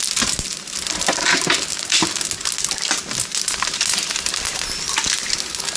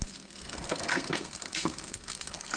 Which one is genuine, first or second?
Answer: first